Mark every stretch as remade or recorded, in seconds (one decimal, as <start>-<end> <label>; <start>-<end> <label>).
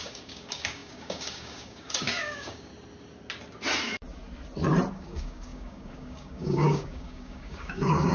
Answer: 0.0-2.7 remade; 2.7-4.9 recorded; 4.9-8.1 remade